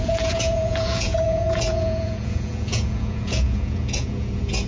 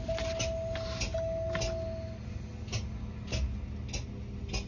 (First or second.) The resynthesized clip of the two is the first